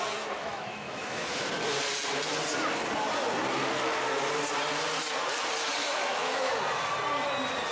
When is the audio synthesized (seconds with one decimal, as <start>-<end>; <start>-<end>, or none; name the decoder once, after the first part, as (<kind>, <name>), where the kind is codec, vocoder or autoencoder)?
0.4-1.5 (autoencoder, DAC-VAE); 5.8-6.5